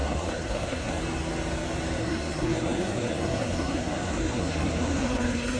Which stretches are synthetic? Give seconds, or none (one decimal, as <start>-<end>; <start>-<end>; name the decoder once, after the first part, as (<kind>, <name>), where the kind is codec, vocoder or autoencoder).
0.0-1.0 (codec, SNAC); 2.0-5.6